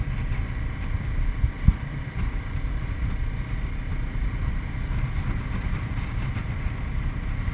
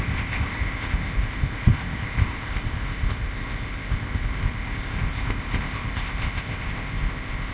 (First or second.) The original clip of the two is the first